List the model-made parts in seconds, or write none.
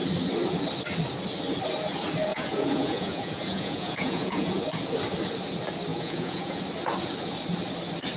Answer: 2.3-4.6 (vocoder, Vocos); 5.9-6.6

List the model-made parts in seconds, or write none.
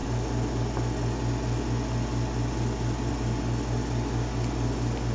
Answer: none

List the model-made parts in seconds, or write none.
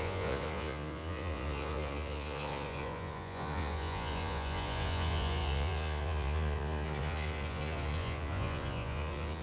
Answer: 0.0-9.4 (vocoder, Vocos)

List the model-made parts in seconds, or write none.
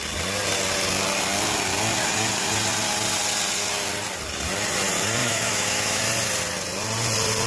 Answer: 5.2-6.0 (autoencoder, DAC-VAE)